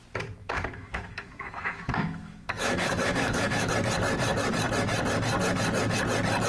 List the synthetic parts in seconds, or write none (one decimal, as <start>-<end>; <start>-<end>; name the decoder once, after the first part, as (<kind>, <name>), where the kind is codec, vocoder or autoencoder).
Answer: 0.4-3.7 (autoencoder, DAC-VAE)